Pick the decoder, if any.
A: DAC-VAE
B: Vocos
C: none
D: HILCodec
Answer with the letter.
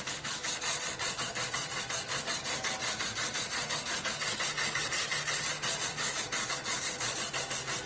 C